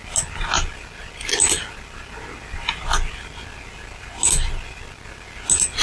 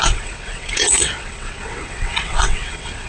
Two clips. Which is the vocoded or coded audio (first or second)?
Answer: second